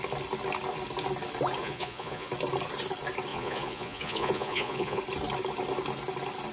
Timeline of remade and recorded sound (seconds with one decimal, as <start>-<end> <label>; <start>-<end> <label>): 0.0-1.6 recorded; 1.6-2.3 remade; 2.3-3.3 recorded; 3.3-5.0 remade; 5.0-6.5 recorded